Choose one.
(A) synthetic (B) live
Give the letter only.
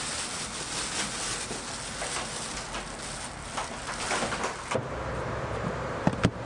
B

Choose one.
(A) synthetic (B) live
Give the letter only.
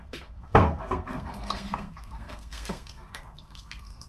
A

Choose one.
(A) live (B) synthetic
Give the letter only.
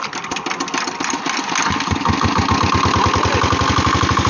A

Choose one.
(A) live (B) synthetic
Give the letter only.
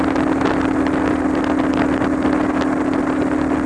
A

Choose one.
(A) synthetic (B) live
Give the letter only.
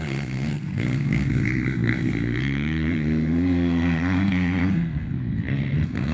A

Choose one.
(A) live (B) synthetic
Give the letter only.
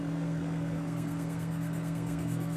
B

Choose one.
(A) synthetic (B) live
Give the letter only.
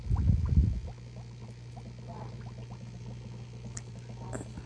B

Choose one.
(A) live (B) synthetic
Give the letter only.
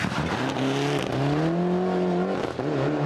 A